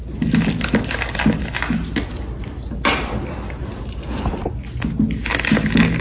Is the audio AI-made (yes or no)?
no